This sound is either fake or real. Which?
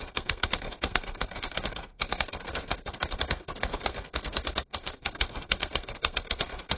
fake